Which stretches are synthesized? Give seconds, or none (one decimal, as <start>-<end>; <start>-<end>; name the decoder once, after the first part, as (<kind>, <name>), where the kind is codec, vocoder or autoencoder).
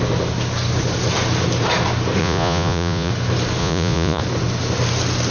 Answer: 2.2-3.1 (vocoder, Vocos); 3.6-4.2